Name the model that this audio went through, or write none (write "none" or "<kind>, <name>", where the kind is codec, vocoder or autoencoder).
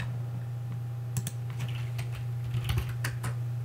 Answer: none